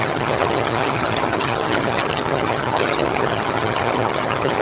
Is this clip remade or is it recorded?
remade